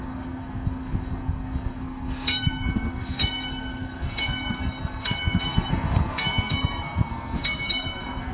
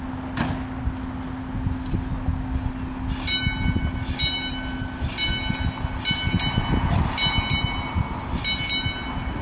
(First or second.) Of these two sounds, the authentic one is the second